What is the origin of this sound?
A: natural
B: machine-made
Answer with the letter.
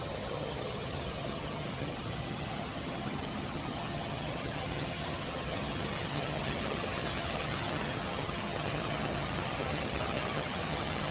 B